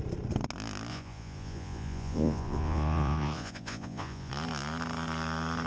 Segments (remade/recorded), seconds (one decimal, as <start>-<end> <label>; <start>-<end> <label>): 0.0-0.9 recorded; 0.9-4.3 remade; 4.3-5.7 recorded